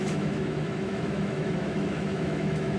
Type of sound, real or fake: fake